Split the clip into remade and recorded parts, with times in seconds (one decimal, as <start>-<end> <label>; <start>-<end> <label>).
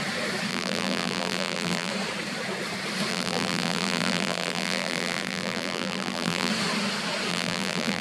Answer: 0.0-0.5 recorded; 0.5-1.9 remade; 1.9-3.1 recorded; 3.1-6.5 remade; 6.5-7.3 recorded; 7.3-8.0 remade